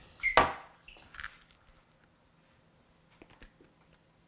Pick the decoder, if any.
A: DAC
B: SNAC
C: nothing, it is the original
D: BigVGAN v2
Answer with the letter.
C